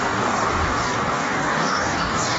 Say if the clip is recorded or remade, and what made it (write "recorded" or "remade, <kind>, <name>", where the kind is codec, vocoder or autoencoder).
remade, codec, DAC